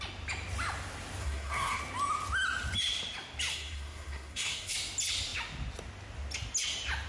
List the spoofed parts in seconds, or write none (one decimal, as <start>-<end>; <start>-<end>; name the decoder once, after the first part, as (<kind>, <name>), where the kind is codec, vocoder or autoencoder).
1.2-1.8 (codec, SNAC); 3.5-4.7